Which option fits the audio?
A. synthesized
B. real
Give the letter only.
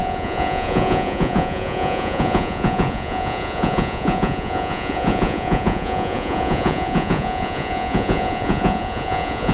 A